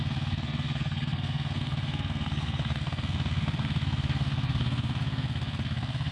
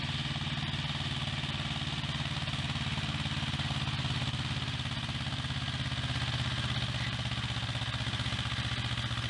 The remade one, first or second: first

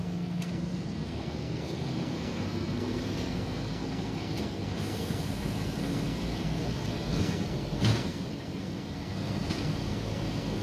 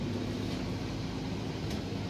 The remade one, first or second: first